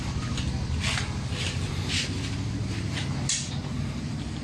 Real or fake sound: real